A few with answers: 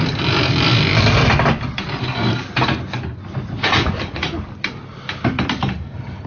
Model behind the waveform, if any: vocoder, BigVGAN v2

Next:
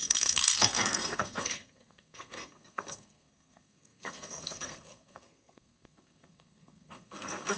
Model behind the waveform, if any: codec, SNAC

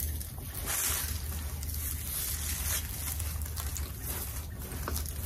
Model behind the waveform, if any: none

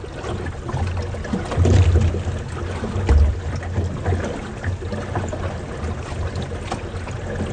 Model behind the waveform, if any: none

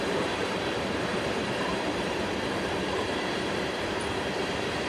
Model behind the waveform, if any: vocoder, BigVGAN v2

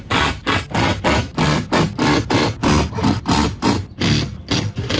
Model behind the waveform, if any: none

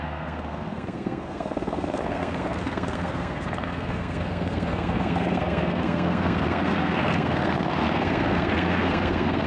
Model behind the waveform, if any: codec, SNAC